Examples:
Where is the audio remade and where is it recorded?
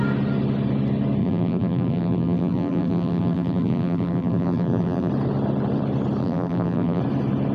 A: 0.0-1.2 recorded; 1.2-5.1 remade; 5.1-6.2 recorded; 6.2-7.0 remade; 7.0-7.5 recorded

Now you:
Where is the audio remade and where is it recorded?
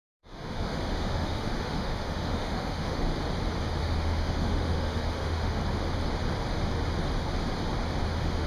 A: 0.0-3.1 remade; 3.1-3.8 recorded; 3.8-5.6 remade; 5.6-8.0 recorded; 8.0-8.5 remade